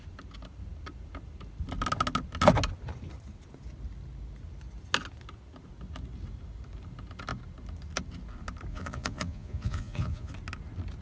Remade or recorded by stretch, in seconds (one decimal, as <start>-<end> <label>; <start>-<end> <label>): 0.0-8.7 recorded; 8.7-10.3 remade; 10.3-11.0 recorded